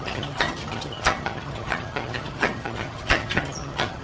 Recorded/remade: remade